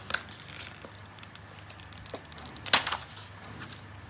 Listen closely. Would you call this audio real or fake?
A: real